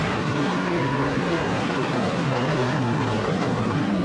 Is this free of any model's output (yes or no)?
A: no